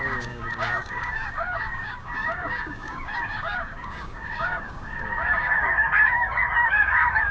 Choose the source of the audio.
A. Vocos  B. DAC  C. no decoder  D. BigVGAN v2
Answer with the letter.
B